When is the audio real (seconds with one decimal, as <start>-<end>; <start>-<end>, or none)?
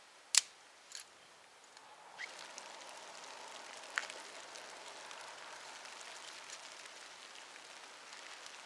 0.0-8.7